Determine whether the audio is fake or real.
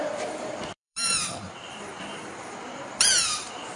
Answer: fake